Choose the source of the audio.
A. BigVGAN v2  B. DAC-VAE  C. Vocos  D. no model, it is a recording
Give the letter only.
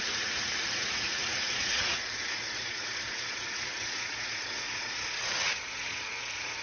C